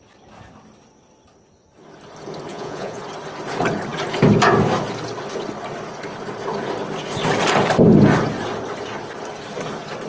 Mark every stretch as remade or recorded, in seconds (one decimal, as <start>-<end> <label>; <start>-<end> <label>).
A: 0.0-2.5 recorded; 2.5-3.0 remade; 3.0-10.1 recorded